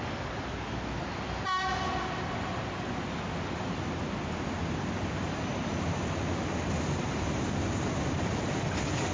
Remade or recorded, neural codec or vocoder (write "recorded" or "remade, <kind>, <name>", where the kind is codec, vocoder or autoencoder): recorded